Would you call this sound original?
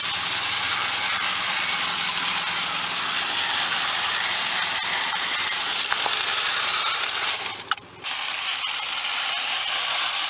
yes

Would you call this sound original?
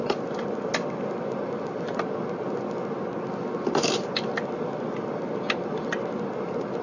yes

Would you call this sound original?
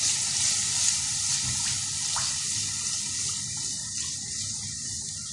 yes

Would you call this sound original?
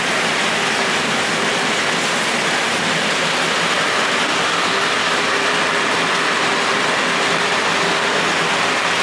yes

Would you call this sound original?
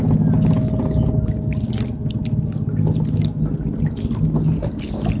yes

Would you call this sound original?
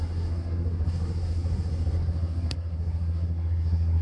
no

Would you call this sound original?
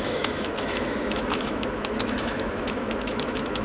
no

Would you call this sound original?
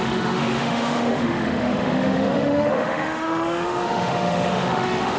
no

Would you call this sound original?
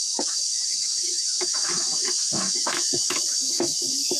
no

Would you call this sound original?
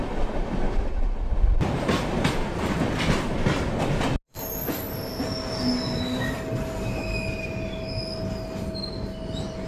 yes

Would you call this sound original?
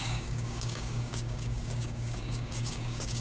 no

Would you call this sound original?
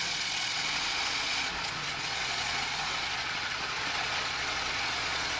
no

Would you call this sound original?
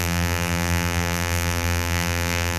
no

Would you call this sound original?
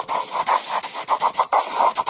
yes